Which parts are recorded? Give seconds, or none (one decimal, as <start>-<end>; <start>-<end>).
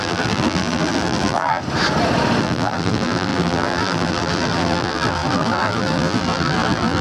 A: 1.6-2.4